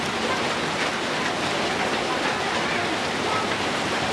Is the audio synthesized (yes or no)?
no